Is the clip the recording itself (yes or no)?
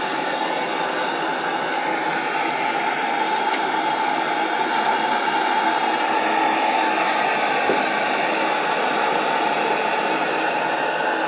yes